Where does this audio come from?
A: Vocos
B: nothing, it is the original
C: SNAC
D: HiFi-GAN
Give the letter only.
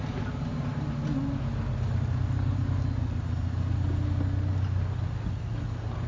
B